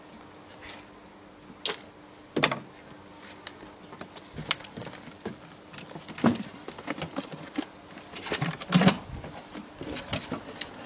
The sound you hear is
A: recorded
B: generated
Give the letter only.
A